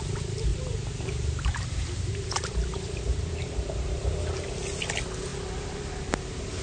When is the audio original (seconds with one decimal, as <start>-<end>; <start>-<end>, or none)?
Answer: 0.0-0.5; 4.5-6.6